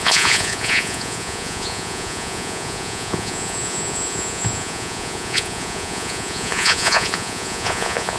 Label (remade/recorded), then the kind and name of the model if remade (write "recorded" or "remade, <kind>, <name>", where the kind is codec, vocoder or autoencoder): remade, vocoder, Vocos